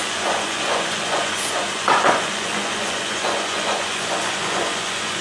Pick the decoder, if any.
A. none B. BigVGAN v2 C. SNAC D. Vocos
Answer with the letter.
D